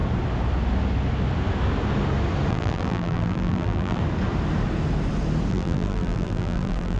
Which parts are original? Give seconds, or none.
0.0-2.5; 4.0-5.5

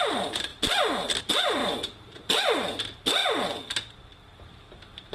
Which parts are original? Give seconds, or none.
3.2-4.4